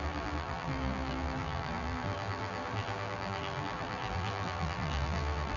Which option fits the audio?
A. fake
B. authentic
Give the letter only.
A